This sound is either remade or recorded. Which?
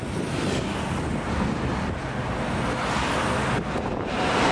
recorded